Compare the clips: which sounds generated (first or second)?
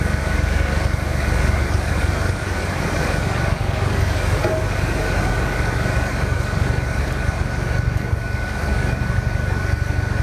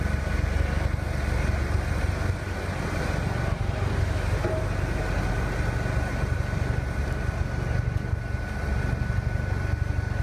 first